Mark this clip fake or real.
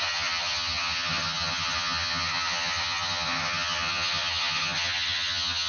fake